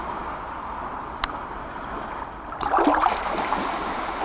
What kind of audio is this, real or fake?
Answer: real